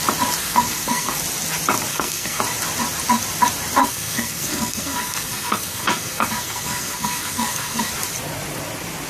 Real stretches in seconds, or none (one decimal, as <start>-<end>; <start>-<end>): 0.0-0.4; 1.2-1.9; 2.4-3.8; 7.9-9.1